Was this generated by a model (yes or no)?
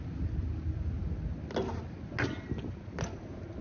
no